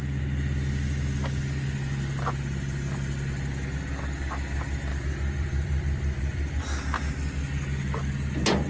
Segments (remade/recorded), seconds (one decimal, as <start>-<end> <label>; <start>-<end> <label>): 0.0-4.9 recorded; 4.9-6.6 remade; 6.6-8.7 recorded